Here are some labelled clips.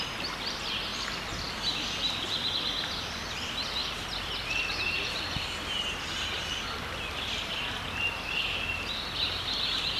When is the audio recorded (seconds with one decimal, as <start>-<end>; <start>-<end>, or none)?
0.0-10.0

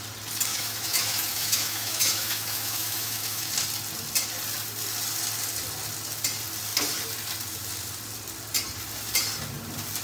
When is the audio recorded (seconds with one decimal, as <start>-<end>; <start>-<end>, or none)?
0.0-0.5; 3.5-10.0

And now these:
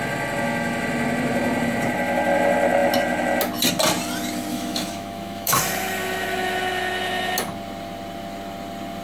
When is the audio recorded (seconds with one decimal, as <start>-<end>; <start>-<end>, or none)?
0.0-4.5; 5.6-9.0

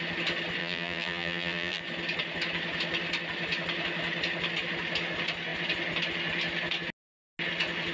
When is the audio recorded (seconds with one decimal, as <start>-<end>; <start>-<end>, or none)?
0.0-0.6; 1.8-7.9

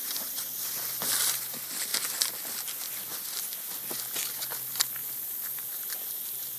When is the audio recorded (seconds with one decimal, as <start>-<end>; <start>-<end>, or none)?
0.7-5.0; 5.8-6.6